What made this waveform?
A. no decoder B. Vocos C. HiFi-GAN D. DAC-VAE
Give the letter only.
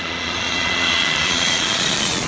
B